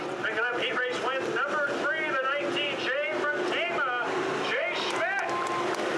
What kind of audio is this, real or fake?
real